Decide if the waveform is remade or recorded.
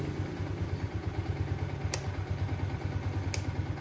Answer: recorded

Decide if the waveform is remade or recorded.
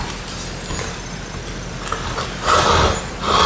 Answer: recorded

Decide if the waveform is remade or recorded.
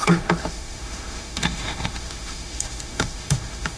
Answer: remade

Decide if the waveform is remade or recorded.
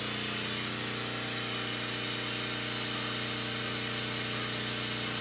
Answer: recorded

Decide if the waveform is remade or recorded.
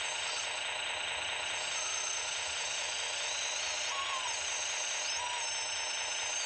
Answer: recorded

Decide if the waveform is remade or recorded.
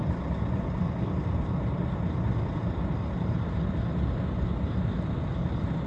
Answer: recorded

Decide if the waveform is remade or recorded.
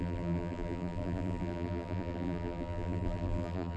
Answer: remade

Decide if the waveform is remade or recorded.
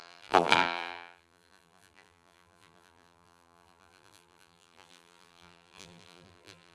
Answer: remade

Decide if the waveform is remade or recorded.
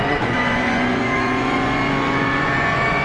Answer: remade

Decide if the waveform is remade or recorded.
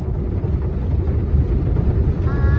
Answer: recorded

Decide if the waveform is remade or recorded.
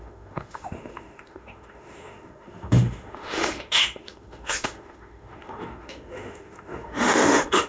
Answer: remade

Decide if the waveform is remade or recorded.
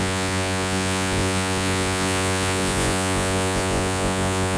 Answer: remade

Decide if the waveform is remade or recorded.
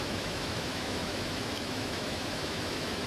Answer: remade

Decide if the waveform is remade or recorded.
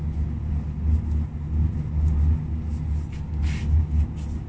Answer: recorded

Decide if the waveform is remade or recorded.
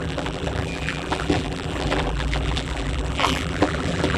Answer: remade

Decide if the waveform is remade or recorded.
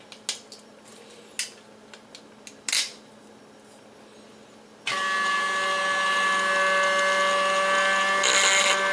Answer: recorded